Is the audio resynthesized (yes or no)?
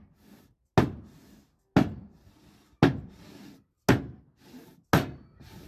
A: no